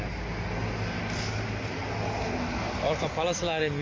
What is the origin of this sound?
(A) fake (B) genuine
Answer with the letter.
B